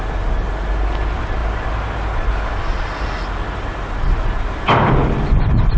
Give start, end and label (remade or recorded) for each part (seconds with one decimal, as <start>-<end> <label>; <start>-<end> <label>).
0.0-5.8 recorded